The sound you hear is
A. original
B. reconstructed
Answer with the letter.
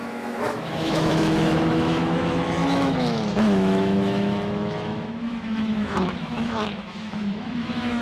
B